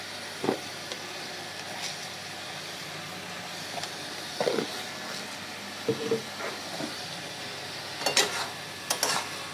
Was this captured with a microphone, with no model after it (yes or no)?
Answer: yes